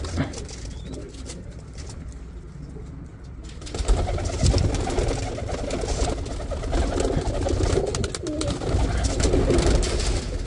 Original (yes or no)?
yes